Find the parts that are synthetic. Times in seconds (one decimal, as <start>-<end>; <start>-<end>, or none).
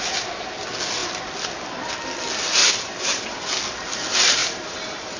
2.6-3.5; 4.4-5.2